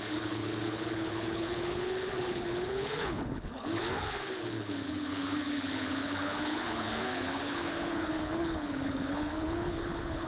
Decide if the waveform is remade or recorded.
remade